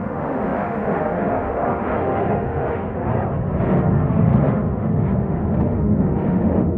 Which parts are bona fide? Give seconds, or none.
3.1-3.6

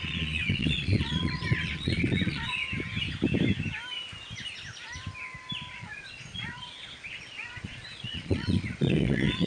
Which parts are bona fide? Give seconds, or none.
2.6-5.7

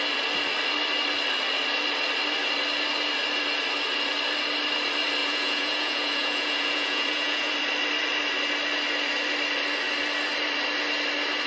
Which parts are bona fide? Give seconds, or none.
0.0-5.2; 7.5-11.5

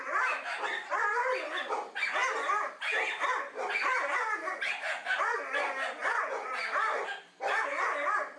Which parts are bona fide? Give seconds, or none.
0.0-6.0; 6.6-8.4

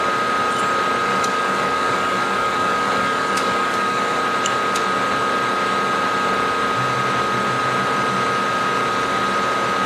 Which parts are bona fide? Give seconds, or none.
0.0-1.1; 4.2-9.9

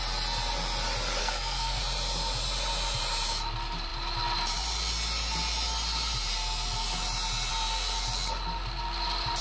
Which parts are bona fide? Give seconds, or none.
0.0-1.2; 1.8-9.4